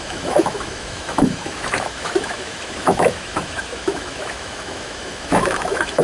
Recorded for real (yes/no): no